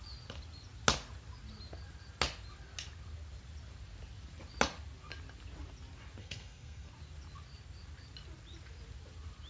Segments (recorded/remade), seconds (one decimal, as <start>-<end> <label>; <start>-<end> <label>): 0.0-6.2 recorded; 6.2-6.9 remade; 6.9-9.5 recorded